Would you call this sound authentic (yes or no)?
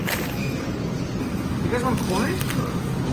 yes